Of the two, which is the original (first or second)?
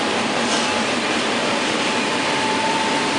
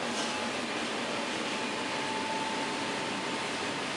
second